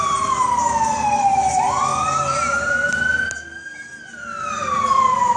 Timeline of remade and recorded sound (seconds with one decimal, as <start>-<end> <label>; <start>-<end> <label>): 0.0-1.9 remade; 1.9-4.5 recorded; 4.5-5.4 remade